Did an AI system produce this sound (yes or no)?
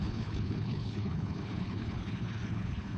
yes